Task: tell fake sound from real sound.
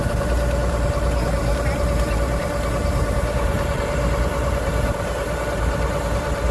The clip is fake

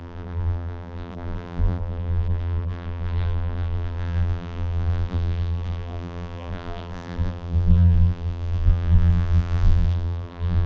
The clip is fake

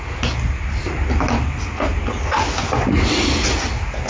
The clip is real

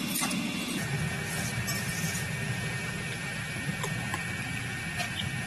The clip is real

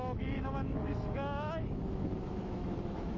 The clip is fake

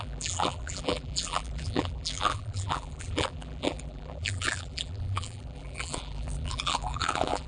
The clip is fake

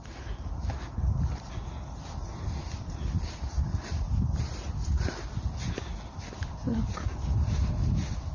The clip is real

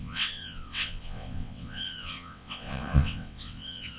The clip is fake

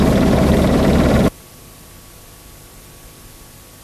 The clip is real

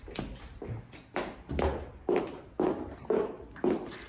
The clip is real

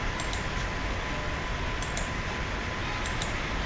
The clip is real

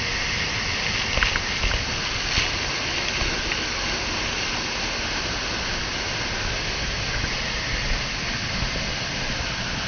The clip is real